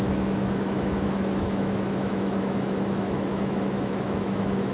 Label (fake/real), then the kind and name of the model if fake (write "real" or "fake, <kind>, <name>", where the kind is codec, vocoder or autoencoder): fake, autoencoder, DAC-VAE